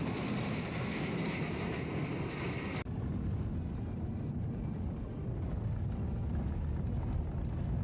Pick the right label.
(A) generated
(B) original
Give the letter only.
B